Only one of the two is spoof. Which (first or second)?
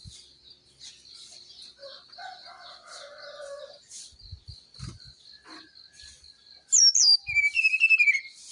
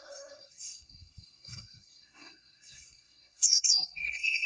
second